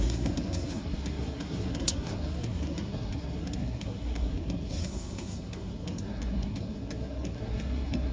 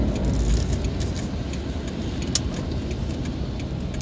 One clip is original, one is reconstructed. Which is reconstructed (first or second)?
first